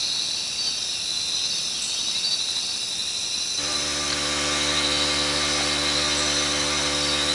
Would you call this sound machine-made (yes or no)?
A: no